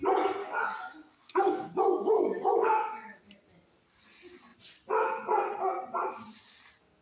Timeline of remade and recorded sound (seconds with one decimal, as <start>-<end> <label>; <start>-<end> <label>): 0.0-0.4 recorded; 0.4-3.2 remade; 3.2-7.0 recorded